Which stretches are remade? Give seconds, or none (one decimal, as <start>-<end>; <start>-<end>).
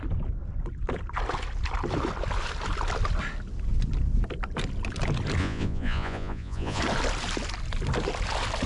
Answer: 5.4-6.8